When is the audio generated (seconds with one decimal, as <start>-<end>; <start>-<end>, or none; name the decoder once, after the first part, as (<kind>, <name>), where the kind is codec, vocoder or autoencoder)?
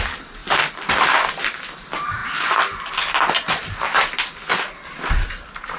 none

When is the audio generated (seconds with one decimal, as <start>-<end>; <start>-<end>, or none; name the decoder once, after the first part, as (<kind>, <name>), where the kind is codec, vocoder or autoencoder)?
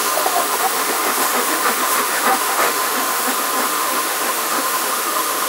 0.0-3.3 (autoencoder, DAC-VAE); 3.7-5.5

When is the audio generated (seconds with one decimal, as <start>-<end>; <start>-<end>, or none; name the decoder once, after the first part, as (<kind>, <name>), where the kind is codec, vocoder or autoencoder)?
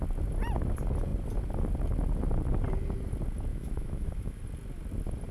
3.5-4.4 (autoencoder, DAC-VAE)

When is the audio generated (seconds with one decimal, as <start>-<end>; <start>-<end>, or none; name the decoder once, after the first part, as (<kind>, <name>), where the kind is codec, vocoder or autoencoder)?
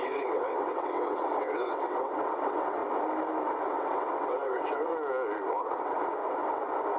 0.0-2.8 (vocoder, WaveNeXt); 3.7-4.9; 5.5-6.2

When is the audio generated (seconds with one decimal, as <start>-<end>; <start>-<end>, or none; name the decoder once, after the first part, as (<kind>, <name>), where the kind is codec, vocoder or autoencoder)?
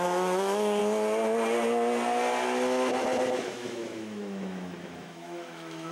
0.0-0.8 (autoencoder, DAC-VAE); 3.5-5.9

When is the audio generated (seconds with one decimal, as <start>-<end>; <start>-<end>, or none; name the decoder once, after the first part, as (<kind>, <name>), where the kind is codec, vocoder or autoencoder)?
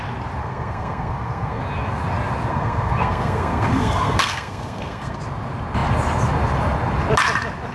0.4-1.6 (codec, SNAC); 2.5-5.2